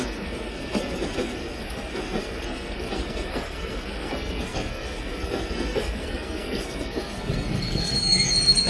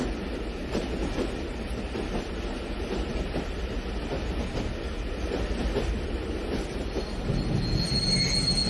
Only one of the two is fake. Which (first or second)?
first